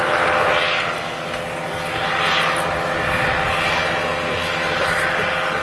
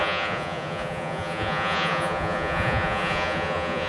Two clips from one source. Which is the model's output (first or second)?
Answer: second